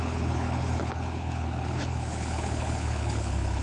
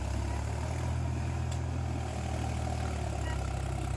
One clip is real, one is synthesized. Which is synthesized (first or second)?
first